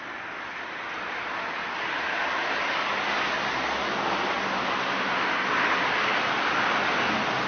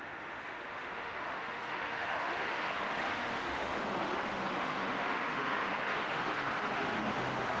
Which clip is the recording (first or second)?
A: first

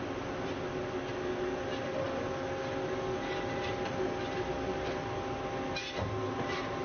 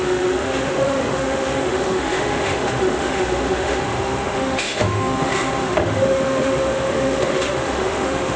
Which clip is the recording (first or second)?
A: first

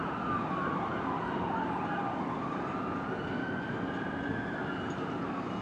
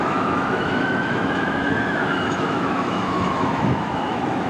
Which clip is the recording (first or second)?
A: first